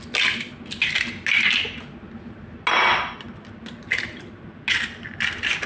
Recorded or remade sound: recorded